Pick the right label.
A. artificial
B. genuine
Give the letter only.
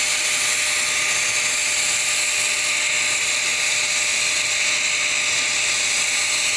B